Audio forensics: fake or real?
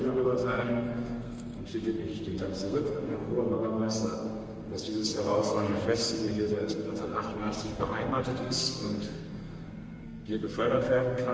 fake